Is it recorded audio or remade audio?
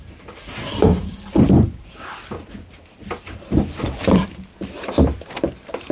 remade